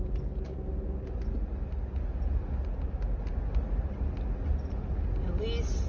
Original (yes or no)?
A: yes